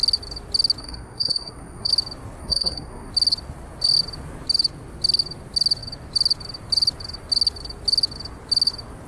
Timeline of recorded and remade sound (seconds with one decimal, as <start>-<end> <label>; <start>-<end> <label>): 0.0-0.8 recorded; 0.8-1.9 remade; 1.9-2.4 recorded; 2.4-3.1 remade; 3.1-9.1 recorded